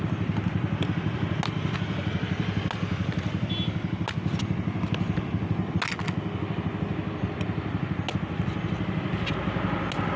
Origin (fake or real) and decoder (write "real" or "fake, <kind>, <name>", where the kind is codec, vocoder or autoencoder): real